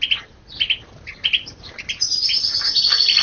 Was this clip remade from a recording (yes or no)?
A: no